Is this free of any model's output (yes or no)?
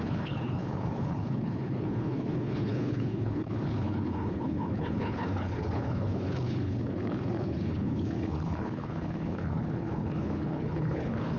no